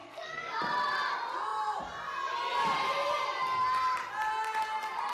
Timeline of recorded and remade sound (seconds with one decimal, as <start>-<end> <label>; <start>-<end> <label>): 0.0-0.6 remade; 0.6-5.1 recorded